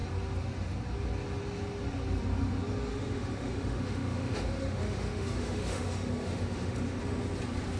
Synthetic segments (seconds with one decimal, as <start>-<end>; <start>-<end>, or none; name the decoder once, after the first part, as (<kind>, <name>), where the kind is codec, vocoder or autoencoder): 2.9-7.0 (autoencoder, DAC-VAE)